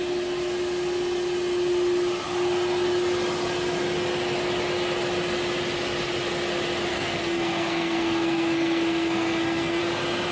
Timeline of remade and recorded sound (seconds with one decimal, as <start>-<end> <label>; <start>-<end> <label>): 0.0-6.9 recorded; 6.9-9.8 remade; 9.8-10.3 recorded